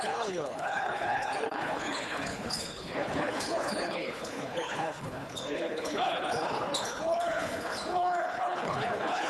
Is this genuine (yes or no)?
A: no